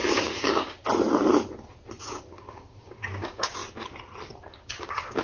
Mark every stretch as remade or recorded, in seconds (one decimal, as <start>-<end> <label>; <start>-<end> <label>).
0.0-0.8 remade; 0.8-2.0 recorded; 2.0-3.6 remade; 3.6-4.4 recorded; 4.4-5.2 remade